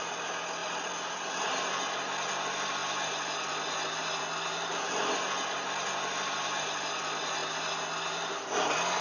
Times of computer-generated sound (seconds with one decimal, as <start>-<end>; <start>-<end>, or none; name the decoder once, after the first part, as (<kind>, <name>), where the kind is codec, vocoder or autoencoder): none